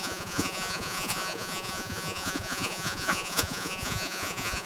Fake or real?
fake